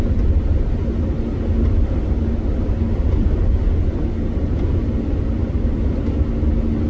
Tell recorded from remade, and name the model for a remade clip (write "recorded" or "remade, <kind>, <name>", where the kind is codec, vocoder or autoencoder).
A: recorded